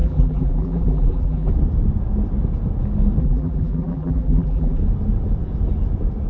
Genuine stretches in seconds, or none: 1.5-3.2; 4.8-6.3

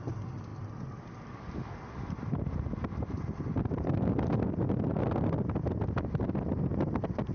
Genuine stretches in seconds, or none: 0.0-7.3